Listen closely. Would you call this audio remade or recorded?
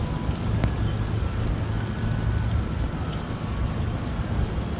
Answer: recorded